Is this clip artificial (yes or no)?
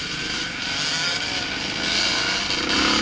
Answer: no